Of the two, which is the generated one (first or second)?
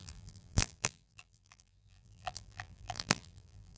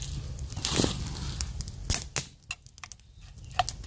first